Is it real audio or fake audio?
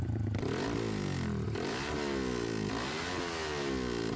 real